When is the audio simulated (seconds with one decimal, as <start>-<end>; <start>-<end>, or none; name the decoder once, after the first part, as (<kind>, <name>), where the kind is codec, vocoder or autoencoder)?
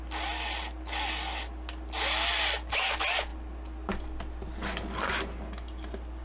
none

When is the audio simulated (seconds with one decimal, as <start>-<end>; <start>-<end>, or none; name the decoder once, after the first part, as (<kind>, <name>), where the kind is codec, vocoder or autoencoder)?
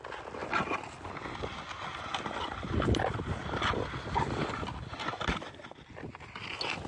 none